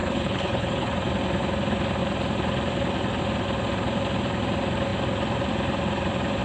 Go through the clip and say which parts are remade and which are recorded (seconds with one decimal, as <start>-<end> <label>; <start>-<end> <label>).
0.0-0.9 remade; 0.9-6.4 recorded